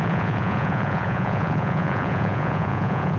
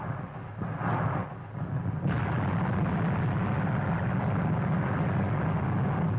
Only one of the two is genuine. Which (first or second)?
second